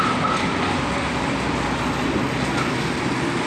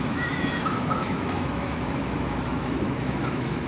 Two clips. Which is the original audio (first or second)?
first